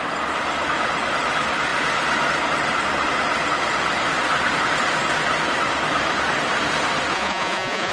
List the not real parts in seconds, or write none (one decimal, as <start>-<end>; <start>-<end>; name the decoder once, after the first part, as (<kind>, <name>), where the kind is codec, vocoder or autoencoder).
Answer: 7.1-7.9 (vocoder, Vocos)